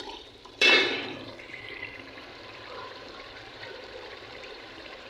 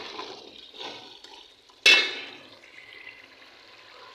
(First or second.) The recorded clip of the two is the second